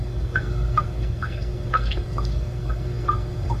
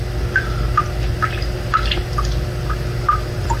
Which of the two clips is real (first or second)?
second